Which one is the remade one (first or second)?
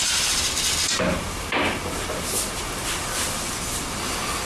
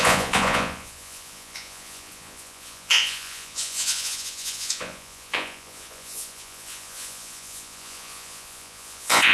second